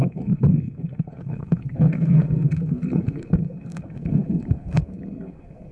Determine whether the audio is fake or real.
fake